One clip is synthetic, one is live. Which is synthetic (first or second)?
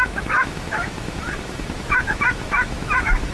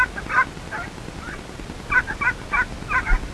first